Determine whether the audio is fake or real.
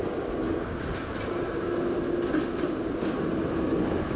real